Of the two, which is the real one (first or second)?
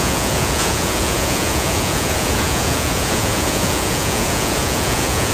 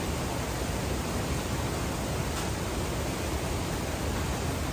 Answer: second